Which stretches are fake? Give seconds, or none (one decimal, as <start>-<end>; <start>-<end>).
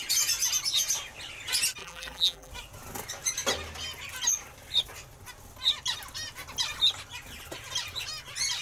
1.8-2.5